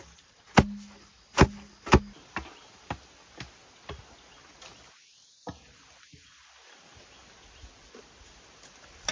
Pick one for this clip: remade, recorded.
recorded